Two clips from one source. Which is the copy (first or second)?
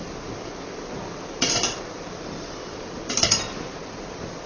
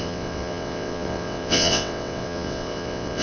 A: second